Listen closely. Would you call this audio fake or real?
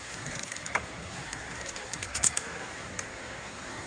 fake